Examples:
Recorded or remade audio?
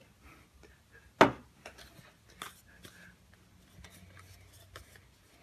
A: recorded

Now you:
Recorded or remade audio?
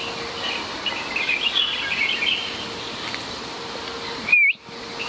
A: recorded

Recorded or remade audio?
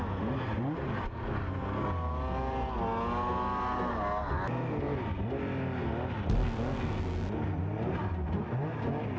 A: recorded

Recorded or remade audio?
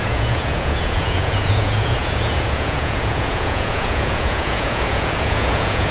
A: remade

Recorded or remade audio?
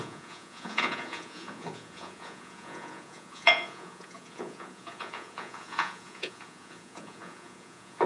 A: remade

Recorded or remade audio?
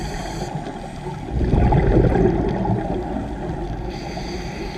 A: recorded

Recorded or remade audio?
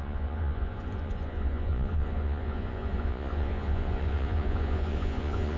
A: remade